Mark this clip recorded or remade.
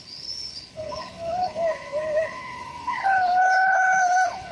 remade